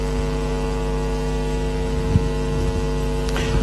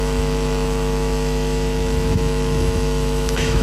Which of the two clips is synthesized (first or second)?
second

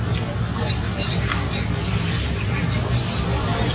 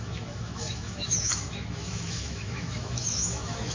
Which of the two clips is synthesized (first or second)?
second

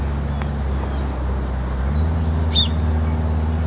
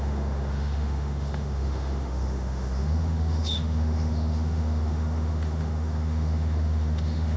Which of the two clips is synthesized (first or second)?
second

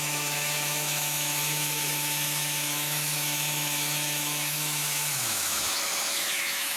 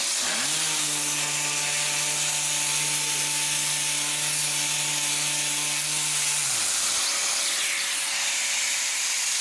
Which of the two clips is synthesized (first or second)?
first